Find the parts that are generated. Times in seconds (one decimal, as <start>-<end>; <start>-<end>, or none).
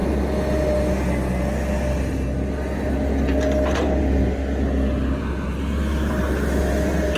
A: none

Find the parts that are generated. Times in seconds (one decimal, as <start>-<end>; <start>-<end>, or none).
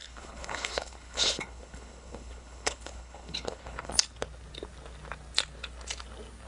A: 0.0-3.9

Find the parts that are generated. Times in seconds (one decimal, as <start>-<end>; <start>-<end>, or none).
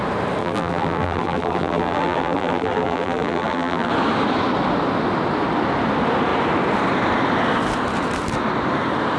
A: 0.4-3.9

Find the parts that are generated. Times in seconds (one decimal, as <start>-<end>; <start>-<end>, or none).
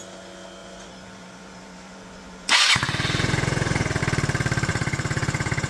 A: 0.6-4.0; 4.7-5.7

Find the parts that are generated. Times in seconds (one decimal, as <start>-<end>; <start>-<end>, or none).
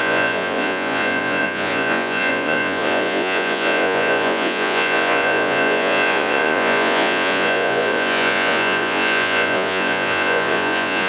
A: 0.0-11.1